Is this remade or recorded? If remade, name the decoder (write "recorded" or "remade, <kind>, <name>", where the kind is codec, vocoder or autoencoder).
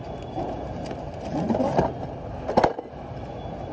recorded